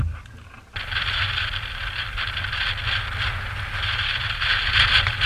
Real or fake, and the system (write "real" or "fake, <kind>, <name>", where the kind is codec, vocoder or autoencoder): real